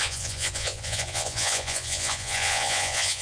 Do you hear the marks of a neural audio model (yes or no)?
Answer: yes